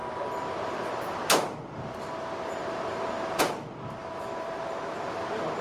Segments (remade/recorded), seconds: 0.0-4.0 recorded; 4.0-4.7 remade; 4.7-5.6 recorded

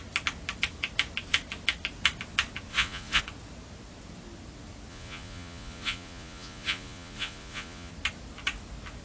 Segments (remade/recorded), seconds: 0.0-2.7 recorded; 2.7-3.2 remade; 3.2-4.9 recorded; 4.9-7.9 remade; 7.9-9.0 recorded

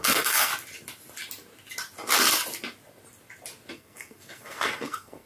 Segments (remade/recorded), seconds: 0.0-0.5 remade; 0.5-3.7 recorded; 3.7-5.3 remade

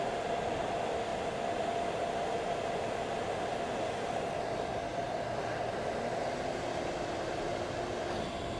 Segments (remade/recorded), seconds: 0.0-8.6 recorded